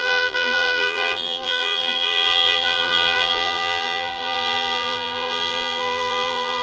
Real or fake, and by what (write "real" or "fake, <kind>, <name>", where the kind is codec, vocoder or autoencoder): fake, vocoder, BigVGAN v2